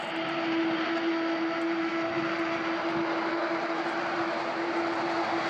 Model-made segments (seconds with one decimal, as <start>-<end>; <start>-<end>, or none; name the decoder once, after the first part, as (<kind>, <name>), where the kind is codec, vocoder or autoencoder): none

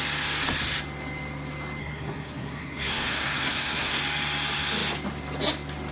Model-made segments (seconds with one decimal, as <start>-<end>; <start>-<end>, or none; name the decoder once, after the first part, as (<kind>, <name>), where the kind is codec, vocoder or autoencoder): 1.8-4.0 (codec, SNAC)